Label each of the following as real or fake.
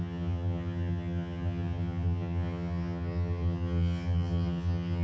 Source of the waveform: fake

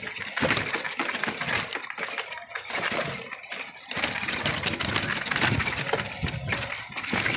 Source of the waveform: real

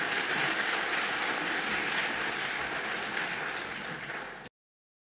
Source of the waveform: real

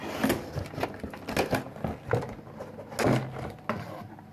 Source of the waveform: real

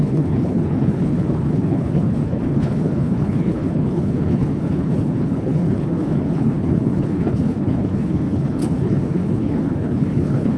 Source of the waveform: fake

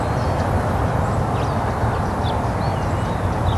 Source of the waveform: real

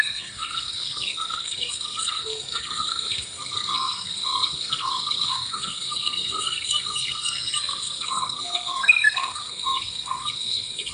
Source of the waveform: fake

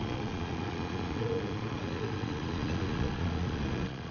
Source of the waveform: fake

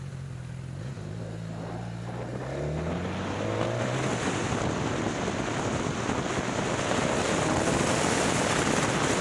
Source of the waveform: real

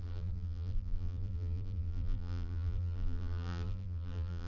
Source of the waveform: fake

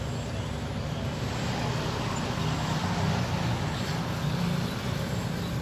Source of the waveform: real